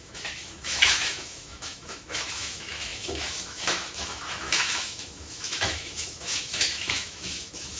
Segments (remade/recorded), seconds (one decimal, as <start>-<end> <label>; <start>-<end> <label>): 0.0-7.8 remade